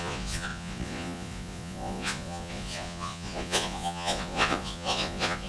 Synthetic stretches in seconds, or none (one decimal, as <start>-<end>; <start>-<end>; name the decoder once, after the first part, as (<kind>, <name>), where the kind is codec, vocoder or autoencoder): 0.0-5.5 (vocoder, Vocos)